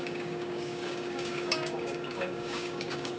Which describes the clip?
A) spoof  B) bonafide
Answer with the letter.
A